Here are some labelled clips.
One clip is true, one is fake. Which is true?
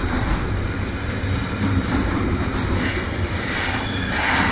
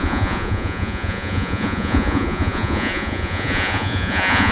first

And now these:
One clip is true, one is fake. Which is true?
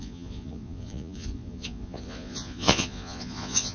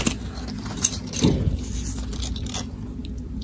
second